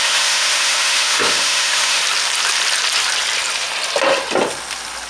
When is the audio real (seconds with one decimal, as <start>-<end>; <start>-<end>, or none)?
2.0-5.1

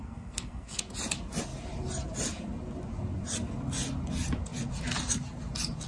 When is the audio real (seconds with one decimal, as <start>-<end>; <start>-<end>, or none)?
0.8-5.9